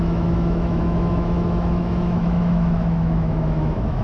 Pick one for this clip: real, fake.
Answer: fake